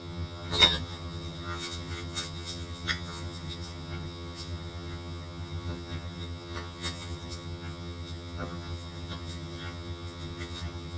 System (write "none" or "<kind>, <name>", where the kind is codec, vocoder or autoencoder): vocoder, HiFi-GAN